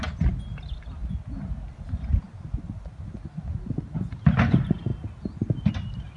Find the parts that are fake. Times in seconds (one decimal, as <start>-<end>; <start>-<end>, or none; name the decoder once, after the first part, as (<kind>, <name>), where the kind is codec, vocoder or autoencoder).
none